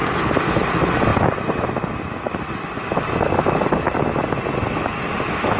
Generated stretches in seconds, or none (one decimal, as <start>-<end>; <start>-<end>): none

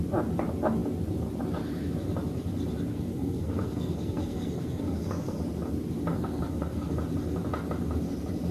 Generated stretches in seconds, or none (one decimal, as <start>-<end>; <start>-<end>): 2.9-5.4; 6.1-6.9